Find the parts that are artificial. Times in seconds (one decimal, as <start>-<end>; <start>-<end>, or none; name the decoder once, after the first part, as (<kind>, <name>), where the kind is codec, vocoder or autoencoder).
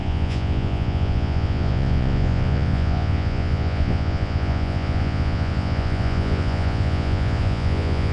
0.0-8.1 (vocoder, Vocos)